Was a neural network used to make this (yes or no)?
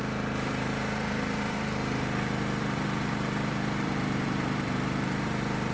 yes